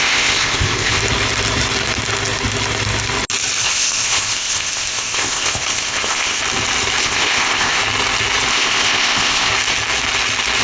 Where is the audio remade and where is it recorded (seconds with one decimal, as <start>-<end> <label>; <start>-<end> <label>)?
0.0-1.0 remade; 1.0-3.6 recorded; 3.6-6.4 remade; 6.4-7.0 recorded; 7.0-7.8 remade; 7.8-8.5 recorded; 8.5-9.5 remade; 9.5-10.6 recorded